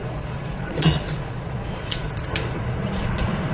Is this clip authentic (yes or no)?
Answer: no